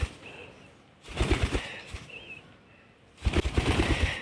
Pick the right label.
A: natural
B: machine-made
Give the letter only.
A